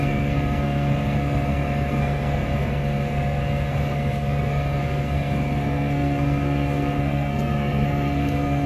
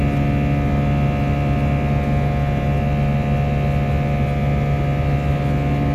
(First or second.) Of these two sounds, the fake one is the first